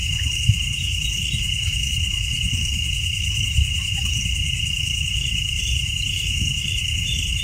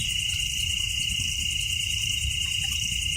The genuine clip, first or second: second